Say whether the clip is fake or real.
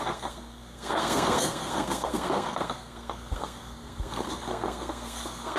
fake